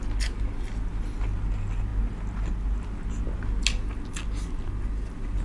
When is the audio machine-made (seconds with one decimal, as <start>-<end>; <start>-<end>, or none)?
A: none